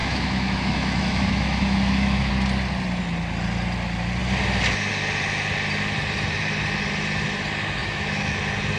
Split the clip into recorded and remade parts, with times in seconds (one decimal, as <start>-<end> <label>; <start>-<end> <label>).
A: 0.0-2.3 remade; 2.3-7.8 recorded; 7.8-8.4 remade; 8.4-8.8 recorded